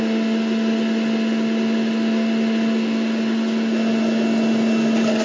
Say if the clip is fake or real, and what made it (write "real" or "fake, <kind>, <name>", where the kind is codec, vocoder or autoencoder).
real